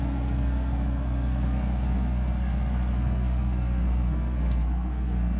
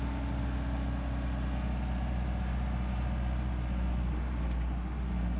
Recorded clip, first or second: second